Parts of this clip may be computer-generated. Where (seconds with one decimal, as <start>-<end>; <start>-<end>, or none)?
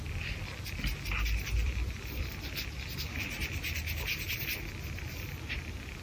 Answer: 1.6-2.2